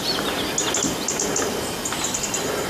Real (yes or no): yes